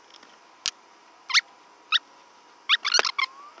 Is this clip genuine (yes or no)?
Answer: yes